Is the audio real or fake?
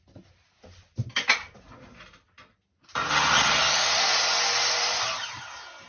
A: real